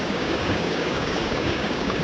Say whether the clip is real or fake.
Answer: fake